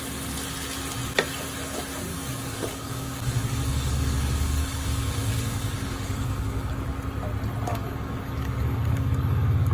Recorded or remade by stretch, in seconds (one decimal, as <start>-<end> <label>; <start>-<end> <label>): 0.0-2.1 recorded; 2.1-6.7 remade; 6.7-7.7 recorded; 7.7-9.7 remade